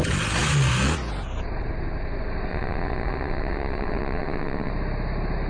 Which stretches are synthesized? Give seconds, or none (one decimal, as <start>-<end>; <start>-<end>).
2.5-4.7